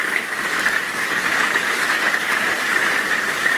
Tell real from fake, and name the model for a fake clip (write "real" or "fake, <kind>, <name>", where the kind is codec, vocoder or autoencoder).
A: fake, codec, DAC